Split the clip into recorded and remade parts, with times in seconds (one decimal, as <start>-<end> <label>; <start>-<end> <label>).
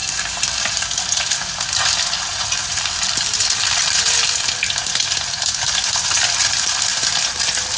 0.0-0.8 remade; 0.8-2.3 recorded; 2.3-4.5 remade; 4.5-6.9 recorded; 6.9-7.8 remade